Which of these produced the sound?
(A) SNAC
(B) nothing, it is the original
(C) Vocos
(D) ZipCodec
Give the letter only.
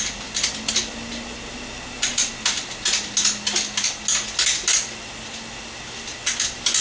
B